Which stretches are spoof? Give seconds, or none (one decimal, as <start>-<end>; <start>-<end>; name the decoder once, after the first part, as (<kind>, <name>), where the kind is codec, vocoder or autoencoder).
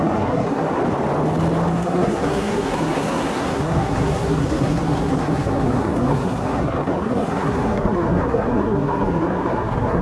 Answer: 0.0-0.8 (codec, SNAC); 1.7-10.0